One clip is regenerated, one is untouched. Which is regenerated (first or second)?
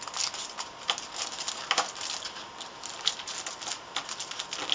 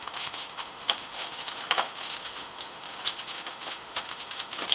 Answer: second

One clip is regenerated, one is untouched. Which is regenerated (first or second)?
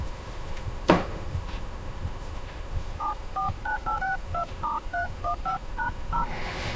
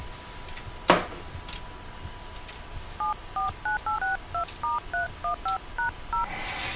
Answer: first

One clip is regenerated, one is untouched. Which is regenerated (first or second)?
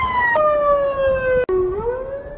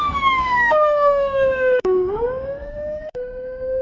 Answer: second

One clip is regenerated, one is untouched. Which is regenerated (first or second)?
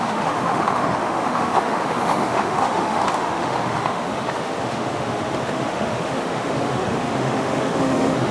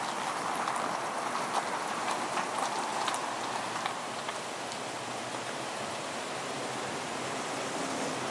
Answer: first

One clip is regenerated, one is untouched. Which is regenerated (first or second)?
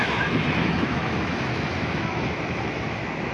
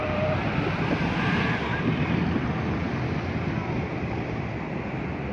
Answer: first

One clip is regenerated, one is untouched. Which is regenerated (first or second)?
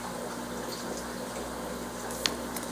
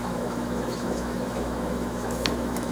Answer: second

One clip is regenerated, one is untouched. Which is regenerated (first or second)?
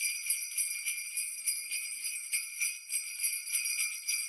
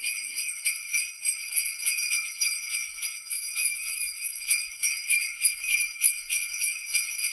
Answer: second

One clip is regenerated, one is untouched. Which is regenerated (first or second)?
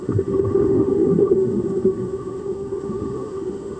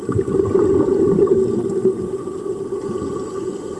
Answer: first